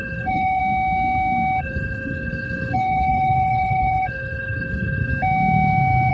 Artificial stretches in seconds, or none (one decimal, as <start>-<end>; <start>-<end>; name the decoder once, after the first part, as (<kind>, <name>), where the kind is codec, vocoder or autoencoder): 0.0-0.6 (codec, HILCodec); 1.6-5.1

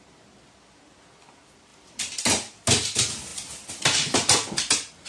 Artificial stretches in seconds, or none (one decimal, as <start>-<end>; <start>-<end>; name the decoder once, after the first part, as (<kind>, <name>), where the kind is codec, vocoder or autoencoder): 1.7-2.2 (vocoder, BigVGAN v2)

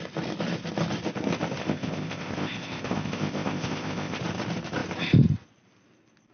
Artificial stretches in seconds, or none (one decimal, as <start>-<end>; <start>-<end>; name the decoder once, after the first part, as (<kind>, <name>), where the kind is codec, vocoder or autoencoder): 1.6-4.2 (codec, ZipCodec)